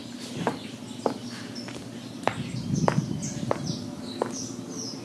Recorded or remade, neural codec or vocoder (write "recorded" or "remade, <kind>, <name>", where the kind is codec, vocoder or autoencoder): recorded